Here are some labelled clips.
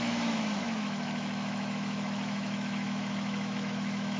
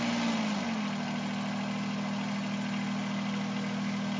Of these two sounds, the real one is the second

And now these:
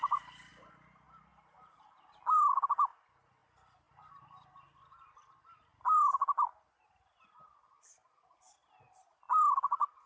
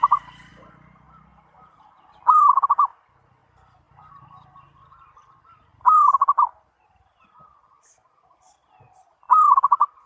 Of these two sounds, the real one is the first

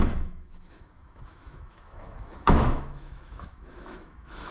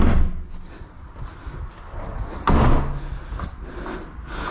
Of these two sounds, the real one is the second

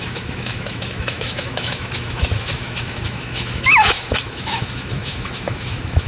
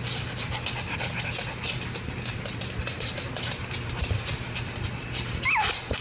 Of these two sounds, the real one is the second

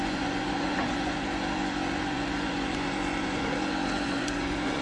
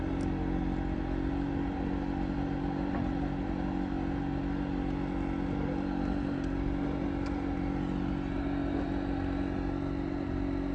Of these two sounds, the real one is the second